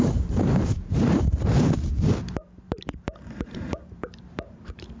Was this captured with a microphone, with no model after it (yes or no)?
no